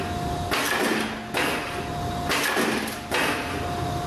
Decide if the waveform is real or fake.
real